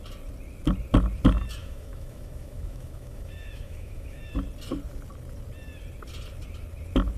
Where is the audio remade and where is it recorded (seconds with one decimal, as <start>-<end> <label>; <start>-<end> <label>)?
0.0-1.6 recorded; 1.6-4.2 remade; 4.2-7.2 recorded